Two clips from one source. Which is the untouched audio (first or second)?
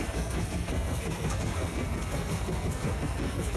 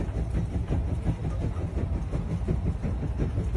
second